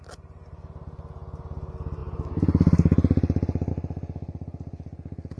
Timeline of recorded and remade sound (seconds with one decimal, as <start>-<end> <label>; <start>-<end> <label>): 0.0-5.4 recorded